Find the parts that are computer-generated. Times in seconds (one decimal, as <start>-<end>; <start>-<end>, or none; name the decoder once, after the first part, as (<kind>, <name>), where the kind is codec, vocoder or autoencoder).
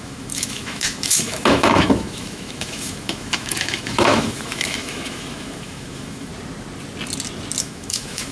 0.0-6.3 (autoencoder, DAC-VAE); 7.6-8.3